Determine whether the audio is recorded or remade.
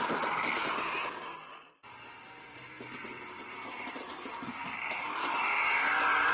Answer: recorded